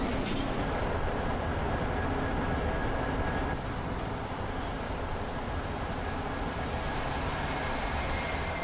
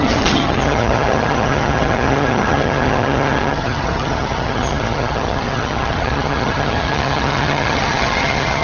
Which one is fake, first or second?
second